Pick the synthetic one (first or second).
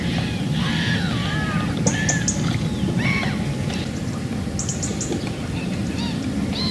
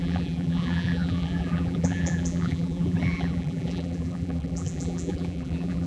second